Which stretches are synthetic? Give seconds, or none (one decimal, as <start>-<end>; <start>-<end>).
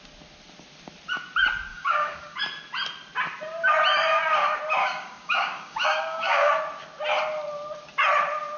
1.7-2.4; 4.8-6.5